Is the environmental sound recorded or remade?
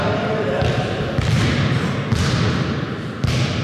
recorded